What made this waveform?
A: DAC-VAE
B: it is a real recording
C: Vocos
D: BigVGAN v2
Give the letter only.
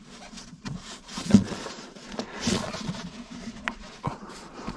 C